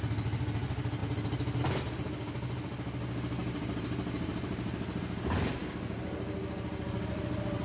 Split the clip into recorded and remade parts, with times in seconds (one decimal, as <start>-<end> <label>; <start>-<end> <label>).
0.0-3.4 recorded; 3.4-5.0 remade; 5.0-7.6 recorded